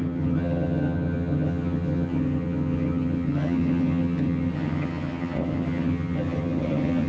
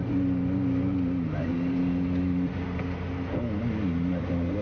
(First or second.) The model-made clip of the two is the first